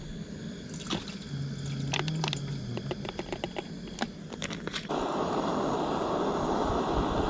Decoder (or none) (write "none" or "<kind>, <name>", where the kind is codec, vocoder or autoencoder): none